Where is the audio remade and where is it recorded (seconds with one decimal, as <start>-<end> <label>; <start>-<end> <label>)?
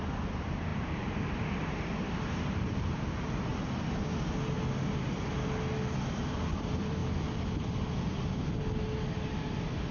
0.0-3.5 remade; 3.5-6.2 recorded; 6.2-7.0 remade; 7.0-9.9 recorded